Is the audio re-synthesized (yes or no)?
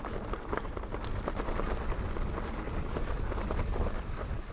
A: no